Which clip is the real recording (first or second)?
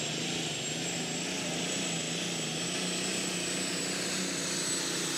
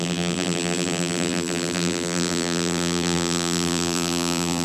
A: first